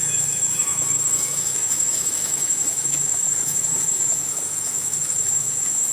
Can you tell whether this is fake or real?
fake